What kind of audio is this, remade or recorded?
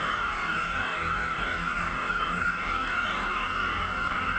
remade